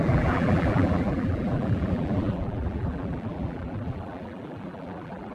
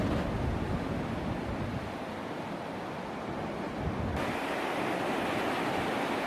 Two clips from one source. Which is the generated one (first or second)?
first